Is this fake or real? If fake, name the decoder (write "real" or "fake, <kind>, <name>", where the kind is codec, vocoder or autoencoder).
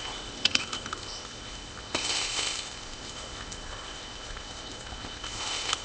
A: fake, codec, ZipCodec